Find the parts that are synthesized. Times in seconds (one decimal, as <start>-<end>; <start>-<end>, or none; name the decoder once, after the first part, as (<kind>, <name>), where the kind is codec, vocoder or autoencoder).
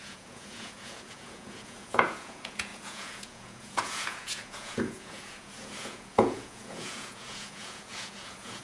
0.0-8.6 (vocoder, Vocos)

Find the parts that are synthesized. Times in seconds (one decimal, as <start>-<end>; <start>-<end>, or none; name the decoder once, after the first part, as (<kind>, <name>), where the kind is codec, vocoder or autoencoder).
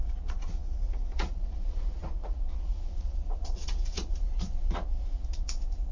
0.0-5.9 (vocoder, Vocos)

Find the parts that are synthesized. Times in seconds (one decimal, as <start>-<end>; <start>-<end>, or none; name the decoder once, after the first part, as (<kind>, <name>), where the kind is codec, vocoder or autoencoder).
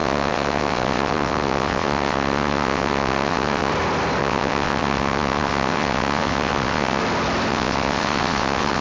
0.0-3.7 (vocoder, WaveNeXt); 4.2-7.0; 7.5-8.8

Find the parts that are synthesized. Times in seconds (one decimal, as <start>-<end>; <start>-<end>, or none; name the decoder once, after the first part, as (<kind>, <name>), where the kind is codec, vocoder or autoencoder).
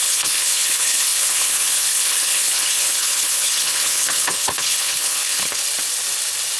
0.0-5.6 (codec, HILCodec)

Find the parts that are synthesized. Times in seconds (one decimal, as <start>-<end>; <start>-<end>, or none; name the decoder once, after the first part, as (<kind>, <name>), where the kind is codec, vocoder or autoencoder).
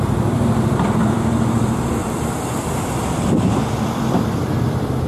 2.0-5.1 (vocoder, BigVGAN v2)